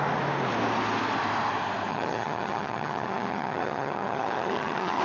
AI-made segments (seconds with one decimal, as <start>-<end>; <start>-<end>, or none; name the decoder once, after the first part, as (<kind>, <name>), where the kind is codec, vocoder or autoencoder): 1.9-5.0 (vocoder, HiFi-GAN)